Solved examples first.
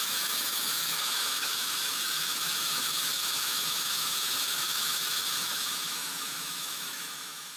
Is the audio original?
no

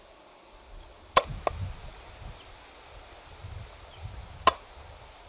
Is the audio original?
yes